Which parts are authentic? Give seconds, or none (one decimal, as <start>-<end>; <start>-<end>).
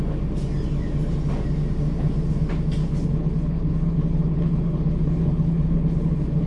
0.0-2.8